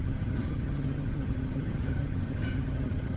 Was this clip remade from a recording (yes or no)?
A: yes